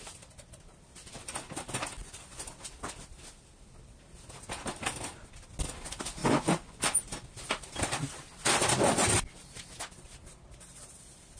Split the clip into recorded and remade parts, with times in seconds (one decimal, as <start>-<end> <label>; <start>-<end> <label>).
0.0-2.0 recorded; 2.0-2.5 remade; 2.5-6.2 recorded; 6.2-6.8 remade; 6.8-11.4 recorded